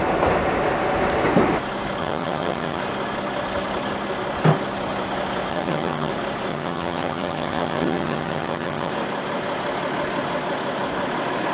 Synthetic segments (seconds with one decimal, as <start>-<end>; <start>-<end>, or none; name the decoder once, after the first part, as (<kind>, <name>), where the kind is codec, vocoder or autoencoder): 2.0-2.8 (vocoder, HiFi-GAN); 5.5-6.1; 6.5-8.9